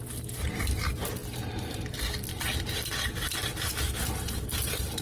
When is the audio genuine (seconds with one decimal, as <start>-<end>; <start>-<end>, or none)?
0.0-2.3

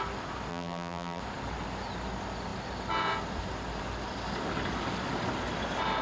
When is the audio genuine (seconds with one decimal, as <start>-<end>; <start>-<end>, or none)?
0.0-0.5; 1.2-6.0

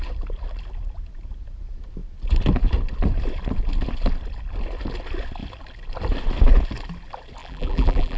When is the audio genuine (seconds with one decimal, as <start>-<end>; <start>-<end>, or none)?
0.0-7.4

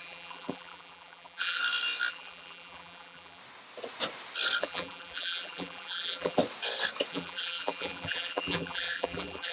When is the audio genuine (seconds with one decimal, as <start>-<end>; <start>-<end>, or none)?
1.6-2.1; 3.4-4.6; 6.4-7.1

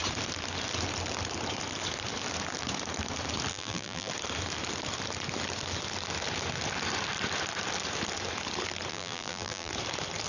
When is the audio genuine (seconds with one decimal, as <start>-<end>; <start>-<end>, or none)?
0.0-3.5; 4.1-8.9; 9.7-10.3

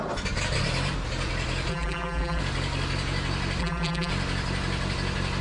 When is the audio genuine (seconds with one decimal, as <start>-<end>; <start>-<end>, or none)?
0.0-1.7; 2.4-3.6; 4.1-5.4